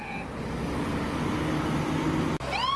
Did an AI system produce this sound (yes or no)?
no